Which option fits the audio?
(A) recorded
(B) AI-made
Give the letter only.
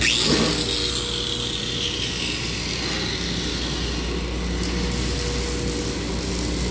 A